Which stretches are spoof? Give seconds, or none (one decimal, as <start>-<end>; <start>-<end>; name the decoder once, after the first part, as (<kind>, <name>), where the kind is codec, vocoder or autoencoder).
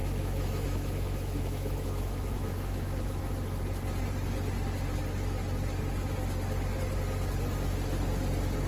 0.0-3.2 (autoencoder, DAC-VAE)